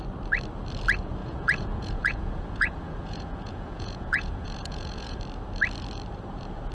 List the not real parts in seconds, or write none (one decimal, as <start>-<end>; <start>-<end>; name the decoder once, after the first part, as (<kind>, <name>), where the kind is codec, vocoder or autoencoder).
1.2-5.2 (vocoder, Vocos)